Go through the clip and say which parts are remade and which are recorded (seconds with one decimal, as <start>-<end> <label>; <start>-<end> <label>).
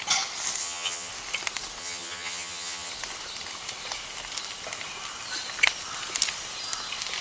0.0-0.6 recorded; 0.6-1.1 remade; 1.1-1.8 recorded; 1.8-2.9 remade; 2.9-7.2 recorded